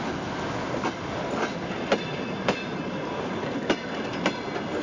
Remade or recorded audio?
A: recorded